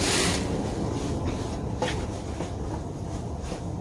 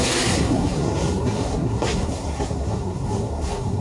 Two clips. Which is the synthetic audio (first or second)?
second